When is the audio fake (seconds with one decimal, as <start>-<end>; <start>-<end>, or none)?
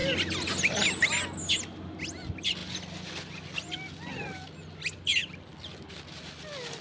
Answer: none